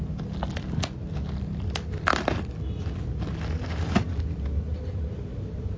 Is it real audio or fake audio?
real